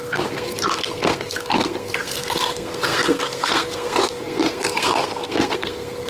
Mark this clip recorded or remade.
remade